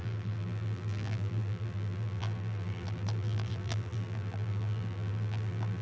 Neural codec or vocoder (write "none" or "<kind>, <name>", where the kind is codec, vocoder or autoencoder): vocoder, BigVGAN v2